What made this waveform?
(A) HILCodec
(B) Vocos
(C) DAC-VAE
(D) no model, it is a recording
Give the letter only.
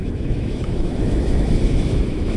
C